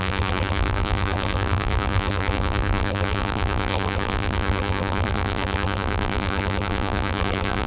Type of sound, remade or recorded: remade